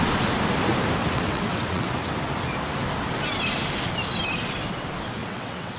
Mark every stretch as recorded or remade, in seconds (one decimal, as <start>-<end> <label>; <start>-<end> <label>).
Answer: 0.0-1.0 recorded; 1.0-1.9 remade; 1.9-5.2 recorded; 5.2-5.8 remade